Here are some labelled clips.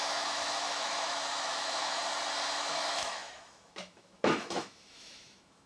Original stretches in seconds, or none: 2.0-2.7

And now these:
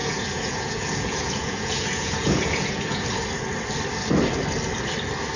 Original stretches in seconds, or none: 3.2-5.4

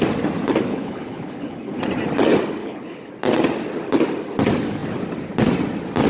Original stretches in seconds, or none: 0.0-0.7; 1.8-2.6; 3.1-6.1

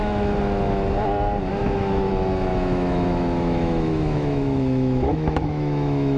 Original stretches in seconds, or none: 0.6-1.5; 2.1-2.5